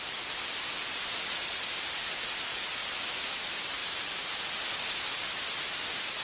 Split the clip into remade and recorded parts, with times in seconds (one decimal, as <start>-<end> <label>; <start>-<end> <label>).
0.0-6.2 recorded